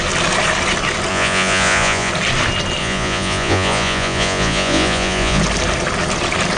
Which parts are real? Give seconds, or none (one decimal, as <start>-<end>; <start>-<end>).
0.0-1.1; 2.1-2.8; 5.4-6.6